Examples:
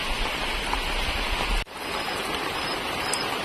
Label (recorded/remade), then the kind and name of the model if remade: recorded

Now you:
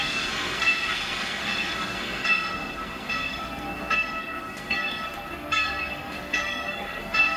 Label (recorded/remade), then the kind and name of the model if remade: remade, codec, SNAC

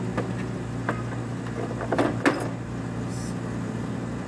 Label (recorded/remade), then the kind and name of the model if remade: recorded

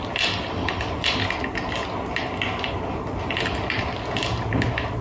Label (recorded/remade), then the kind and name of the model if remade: recorded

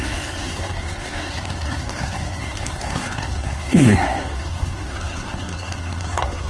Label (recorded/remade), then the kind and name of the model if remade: remade, codec, SNAC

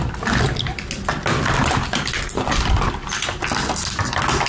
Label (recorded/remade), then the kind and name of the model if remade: recorded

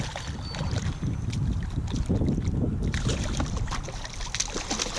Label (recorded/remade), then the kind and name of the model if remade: recorded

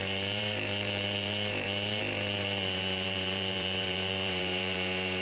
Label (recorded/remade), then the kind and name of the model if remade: remade, vocoder, BigVGAN v2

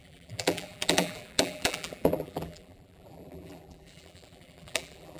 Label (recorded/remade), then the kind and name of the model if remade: remade, vocoder, BigVGAN v2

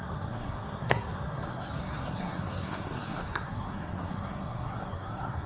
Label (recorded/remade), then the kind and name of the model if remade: remade, codec, SNAC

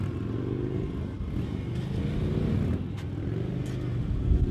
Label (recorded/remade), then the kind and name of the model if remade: recorded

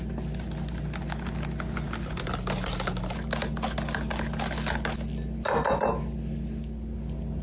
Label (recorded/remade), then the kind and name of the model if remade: recorded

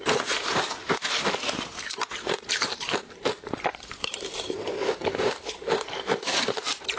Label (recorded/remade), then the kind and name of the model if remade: remade, vocoder, BigVGAN v2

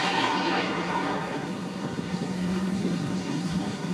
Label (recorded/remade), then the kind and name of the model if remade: remade, codec, SNAC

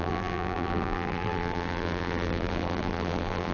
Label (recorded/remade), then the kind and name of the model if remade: remade, vocoder, BigVGAN v2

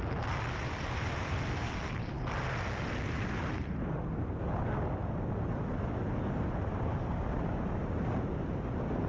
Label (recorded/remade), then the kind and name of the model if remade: recorded